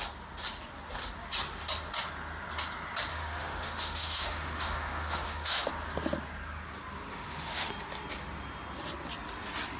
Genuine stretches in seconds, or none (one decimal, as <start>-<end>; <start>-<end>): 0.0-3.1; 5.7-7.1; 7.7-9.8